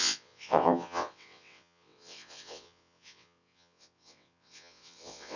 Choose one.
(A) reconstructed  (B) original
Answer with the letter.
A